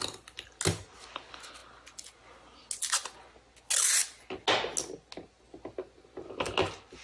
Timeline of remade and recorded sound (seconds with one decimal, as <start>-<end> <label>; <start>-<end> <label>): 0.0-7.0 recorded